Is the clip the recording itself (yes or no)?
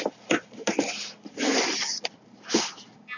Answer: yes